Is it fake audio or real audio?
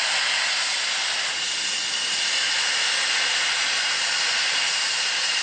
real